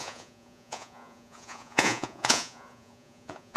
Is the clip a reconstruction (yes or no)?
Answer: yes